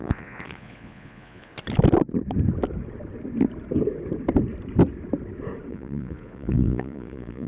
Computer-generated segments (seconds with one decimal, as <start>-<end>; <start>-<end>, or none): 0.0-1.5; 5.7-7.5